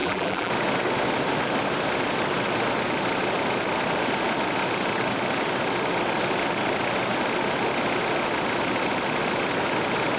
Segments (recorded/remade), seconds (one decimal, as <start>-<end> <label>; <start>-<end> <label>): 0.0-0.5 remade; 0.5-10.2 recorded